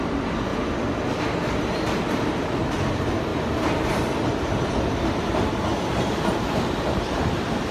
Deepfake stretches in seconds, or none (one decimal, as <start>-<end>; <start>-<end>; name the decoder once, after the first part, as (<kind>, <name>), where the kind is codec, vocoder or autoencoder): 5.7-6.8 (vocoder, BigVGAN v2)

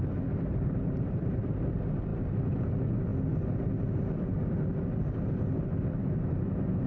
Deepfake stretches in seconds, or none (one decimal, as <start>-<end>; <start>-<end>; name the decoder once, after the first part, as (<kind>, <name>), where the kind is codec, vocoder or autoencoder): 0.5-1.7 (vocoder, BigVGAN v2)

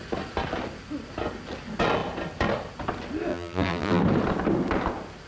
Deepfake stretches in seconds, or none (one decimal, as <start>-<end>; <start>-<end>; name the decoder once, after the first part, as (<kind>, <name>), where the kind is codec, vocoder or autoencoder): 3.3-4.0 (vocoder, BigVGAN v2)

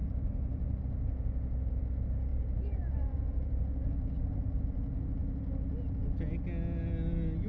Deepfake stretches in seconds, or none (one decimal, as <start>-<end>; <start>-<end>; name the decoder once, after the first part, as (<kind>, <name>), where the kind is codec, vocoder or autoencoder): 0.0-0.8 (vocoder, BigVGAN v2); 2.3-3.5

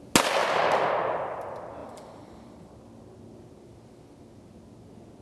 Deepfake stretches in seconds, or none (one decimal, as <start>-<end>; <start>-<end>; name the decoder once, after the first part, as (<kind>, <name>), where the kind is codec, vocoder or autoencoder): 0.4-0.9 (vocoder, BigVGAN v2); 1.8-2.7

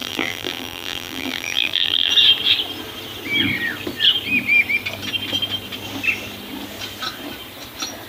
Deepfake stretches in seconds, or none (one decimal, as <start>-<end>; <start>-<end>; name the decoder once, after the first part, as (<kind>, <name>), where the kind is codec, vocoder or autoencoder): 0.0-2.1 (vocoder, BigVGAN v2)

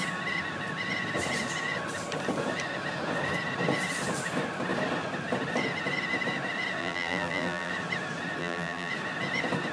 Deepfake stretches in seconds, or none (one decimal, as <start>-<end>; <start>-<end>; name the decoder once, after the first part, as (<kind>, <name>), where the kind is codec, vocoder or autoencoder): 6.8-7.7 (vocoder, BigVGAN v2); 8.4-8.9